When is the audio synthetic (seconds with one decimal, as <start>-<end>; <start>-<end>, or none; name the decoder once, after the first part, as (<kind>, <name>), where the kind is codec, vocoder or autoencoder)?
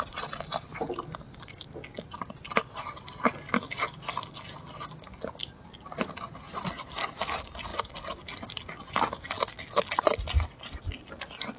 none